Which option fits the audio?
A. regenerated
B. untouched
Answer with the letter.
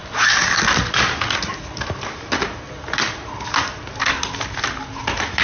B